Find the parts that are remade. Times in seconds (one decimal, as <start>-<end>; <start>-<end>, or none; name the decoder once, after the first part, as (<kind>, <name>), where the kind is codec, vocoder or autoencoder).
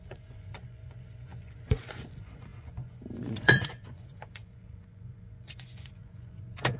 0.0-6.8 (vocoder, Vocos)